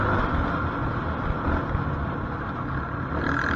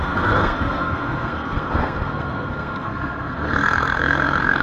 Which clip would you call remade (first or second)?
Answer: second